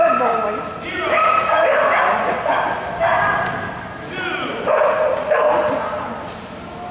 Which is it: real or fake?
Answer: real